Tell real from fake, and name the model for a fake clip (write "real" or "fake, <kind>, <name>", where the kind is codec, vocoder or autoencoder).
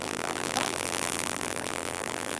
fake, vocoder, BigVGAN v2